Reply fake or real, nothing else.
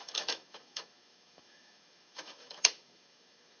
fake